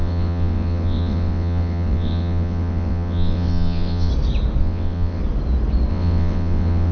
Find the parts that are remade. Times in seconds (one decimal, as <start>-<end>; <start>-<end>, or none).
0.0-4.1; 4.6-5.2; 5.9-6.9